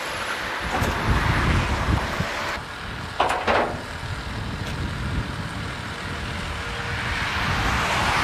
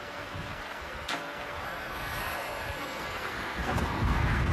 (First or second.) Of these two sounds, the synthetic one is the second